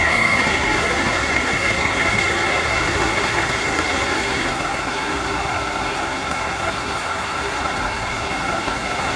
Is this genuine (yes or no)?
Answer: no